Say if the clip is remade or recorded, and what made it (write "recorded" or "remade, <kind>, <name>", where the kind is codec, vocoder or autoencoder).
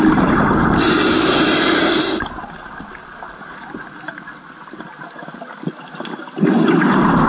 recorded